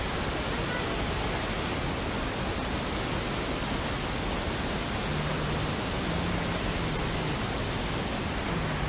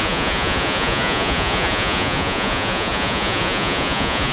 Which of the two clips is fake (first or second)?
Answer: second